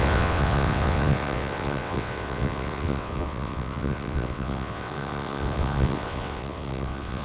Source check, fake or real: fake